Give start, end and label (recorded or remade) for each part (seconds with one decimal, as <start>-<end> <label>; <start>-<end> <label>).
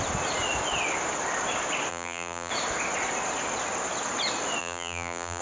0.0-1.9 recorded; 1.9-2.5 remade; 2.5-4.6 recorded; 4.6-5.4 remade